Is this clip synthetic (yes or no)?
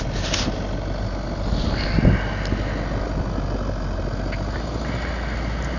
no